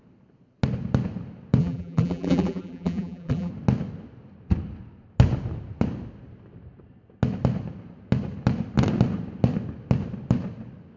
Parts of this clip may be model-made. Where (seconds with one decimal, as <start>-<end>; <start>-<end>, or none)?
1.6-3.5